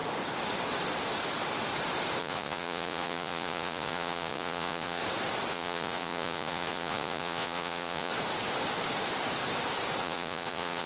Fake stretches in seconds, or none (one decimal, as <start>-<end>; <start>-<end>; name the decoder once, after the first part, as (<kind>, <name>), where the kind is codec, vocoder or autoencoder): 2.2-5.0 (vocoder, Vocos); 5.5-8.1; 10.0-10.9